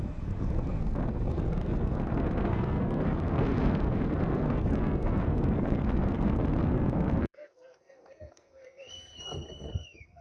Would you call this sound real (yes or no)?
no